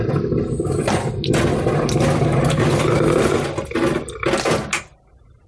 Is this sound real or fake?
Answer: real